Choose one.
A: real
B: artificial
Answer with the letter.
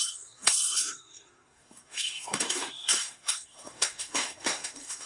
B